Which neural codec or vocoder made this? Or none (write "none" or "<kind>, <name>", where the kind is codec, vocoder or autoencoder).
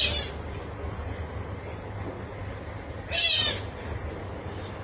none